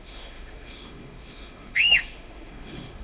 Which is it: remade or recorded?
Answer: remade